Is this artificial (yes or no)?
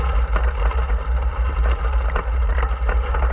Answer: no